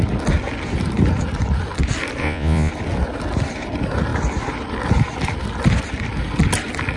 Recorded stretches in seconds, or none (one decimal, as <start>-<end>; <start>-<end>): 0.0-2.2; 2.7-7.0